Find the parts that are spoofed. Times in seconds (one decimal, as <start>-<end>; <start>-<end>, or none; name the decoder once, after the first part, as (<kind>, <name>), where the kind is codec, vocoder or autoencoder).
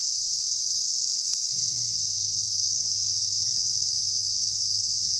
0.0-5.2 (codec, SNAC)